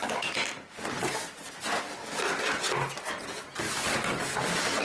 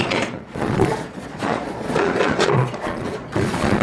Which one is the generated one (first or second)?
second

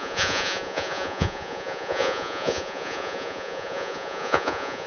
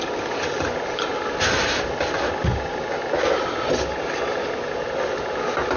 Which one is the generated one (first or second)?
first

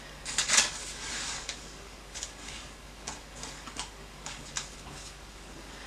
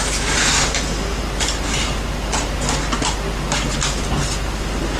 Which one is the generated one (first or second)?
first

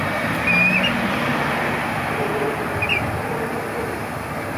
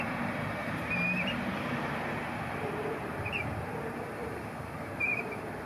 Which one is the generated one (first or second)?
second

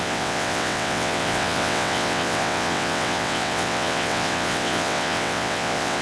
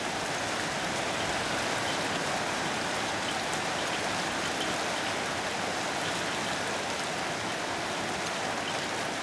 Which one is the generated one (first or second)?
first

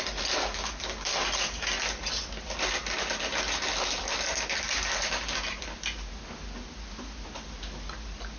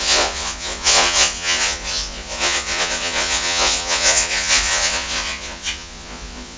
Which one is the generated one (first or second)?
second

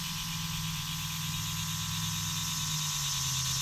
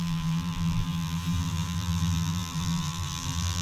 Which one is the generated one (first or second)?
second